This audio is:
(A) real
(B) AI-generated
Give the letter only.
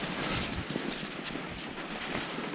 A